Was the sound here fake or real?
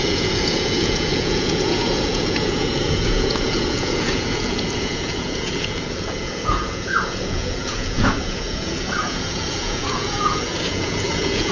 fake